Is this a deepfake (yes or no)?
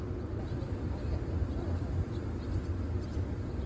no